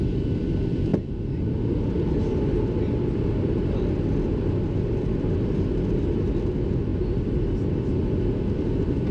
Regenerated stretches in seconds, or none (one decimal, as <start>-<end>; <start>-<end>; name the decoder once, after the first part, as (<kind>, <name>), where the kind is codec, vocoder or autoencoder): none